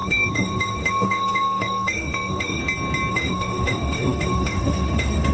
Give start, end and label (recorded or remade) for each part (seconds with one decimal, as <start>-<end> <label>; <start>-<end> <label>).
0.0-2.6 remade; 2.6-3.1 recorded; 3.1-5.3 remade